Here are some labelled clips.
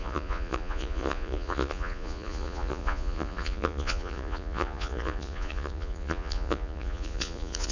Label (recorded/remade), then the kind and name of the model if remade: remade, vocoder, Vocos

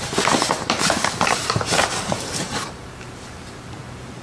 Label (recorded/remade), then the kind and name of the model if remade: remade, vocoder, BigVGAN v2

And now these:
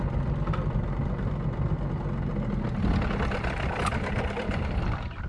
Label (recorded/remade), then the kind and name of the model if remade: recorded